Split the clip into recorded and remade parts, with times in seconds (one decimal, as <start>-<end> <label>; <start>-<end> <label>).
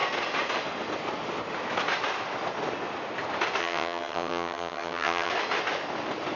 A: 0.0-3.6 recorded; 3.6-5.3 remade; 5.3-6.4 recorded